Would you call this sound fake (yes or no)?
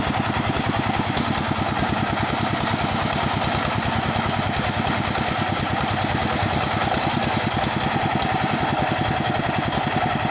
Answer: no